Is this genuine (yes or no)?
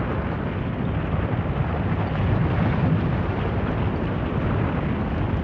yes